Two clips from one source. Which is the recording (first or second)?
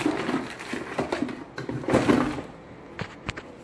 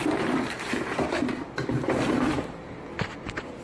first